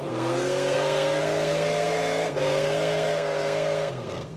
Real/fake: fake